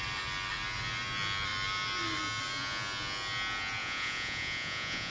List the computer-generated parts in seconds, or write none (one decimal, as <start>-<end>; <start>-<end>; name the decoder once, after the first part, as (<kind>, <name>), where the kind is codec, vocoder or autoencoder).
3.8-5.1 (vocoder, Vocos)

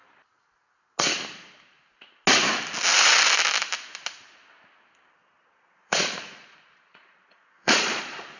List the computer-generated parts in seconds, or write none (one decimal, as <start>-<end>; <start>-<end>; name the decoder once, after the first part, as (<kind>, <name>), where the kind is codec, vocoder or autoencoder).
5.2-8.4 (vocoder, Vocos)

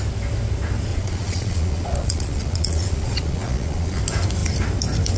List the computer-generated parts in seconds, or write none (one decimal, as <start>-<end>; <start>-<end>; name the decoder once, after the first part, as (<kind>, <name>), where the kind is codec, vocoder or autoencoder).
0.9-4.0 (vocoder, Vocos)